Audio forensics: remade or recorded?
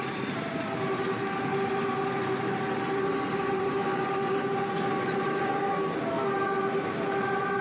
recorded